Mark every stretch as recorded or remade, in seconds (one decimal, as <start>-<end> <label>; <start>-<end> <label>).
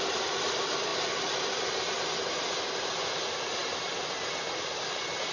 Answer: 0.0-5.3 recorded